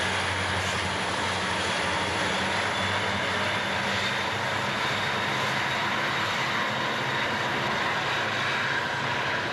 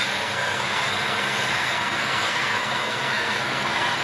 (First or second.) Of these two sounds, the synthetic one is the second